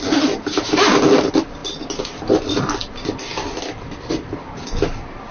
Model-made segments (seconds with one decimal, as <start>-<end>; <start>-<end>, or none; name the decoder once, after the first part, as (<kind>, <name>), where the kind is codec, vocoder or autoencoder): none